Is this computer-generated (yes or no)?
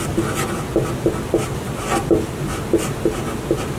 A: no